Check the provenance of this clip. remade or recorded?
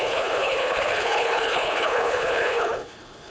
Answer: remade